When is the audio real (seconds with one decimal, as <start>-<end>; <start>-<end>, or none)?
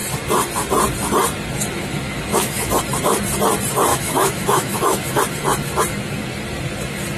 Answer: 0.0-2.3; 2.8-3.9; 5.2-7.2